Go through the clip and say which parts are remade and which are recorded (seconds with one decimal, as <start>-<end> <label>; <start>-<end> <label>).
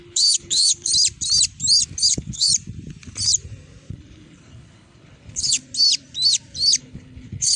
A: 0.0-0.9 remade; 0.9-2.1 recorded; 2.1-2.5 remade; 2.5-3.9 recorded; 3.9-5.6 remade; 5.6-6.8 recorded; 6.8-7.6 remade